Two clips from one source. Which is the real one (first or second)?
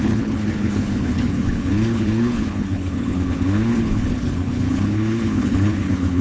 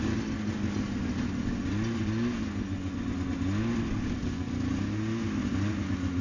second